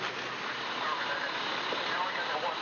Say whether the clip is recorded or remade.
recorded